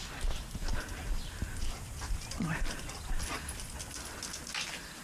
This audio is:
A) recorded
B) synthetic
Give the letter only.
A